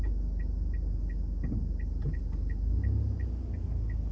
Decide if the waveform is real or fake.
real